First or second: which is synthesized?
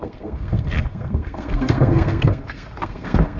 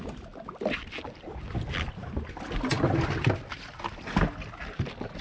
first